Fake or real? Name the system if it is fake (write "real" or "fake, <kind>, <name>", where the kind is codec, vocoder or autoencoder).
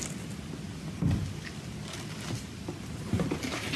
real